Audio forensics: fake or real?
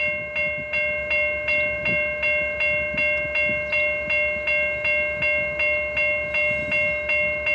real